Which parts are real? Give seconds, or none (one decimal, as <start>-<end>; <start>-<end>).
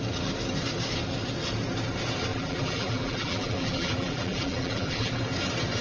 0.0-2.3; 5.2-5.8